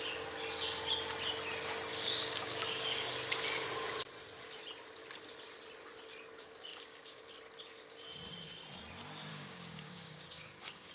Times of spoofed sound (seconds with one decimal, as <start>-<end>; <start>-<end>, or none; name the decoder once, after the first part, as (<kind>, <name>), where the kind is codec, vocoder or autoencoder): 1.9-3.1 (codec, DAC); 6.7-7.2; 9.3-10.9